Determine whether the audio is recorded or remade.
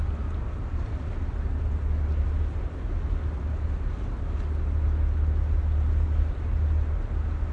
recorded